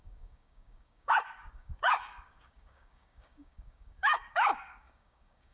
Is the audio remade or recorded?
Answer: remade